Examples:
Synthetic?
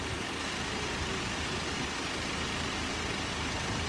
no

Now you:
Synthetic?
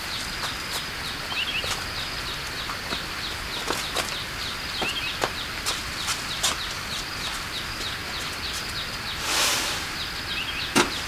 no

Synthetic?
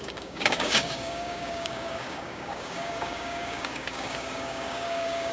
yes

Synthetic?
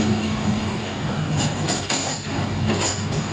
yes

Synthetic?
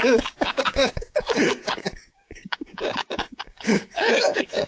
yes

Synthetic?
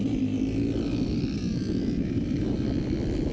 no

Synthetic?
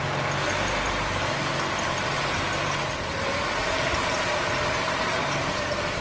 no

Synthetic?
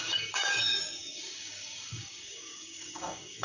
yes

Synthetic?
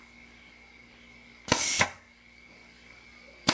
yes